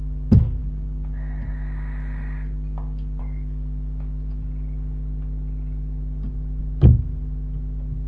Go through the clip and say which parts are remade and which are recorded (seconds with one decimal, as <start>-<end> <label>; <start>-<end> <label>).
0.0-8.1 recorded